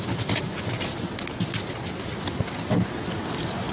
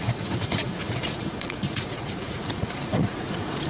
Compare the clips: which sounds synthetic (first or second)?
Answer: second